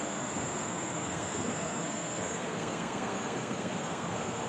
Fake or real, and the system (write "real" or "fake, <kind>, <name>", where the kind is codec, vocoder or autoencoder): fake, codec, SNAC